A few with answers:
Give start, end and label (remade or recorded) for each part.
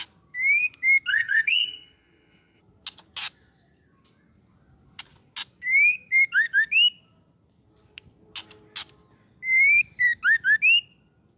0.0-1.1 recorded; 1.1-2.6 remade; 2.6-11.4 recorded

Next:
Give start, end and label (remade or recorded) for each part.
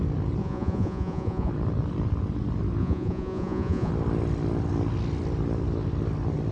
0.0-0.4 recorded; 0.4-1.5 remade; 1.5-2.8 recorded; 2.8-3.9 remade; 3.9-6.5 recorded